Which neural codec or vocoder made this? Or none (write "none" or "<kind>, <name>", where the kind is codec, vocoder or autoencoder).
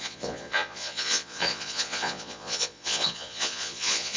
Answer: vocoder, Vocos